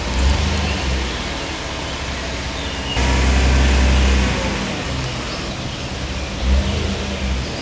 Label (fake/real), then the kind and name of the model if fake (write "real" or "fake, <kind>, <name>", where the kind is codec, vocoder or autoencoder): real